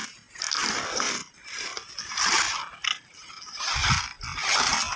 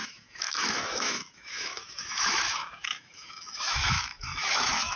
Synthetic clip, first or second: second